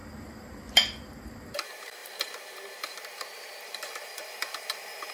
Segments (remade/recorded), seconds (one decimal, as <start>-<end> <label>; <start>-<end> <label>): 0.0-5.1 remade